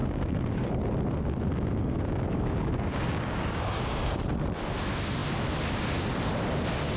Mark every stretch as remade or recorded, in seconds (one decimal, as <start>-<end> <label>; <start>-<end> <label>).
0.0-0.7 remade; 0.7-1.5 recorded; 1.5-4.2 remade; 4.2-7.0 recorded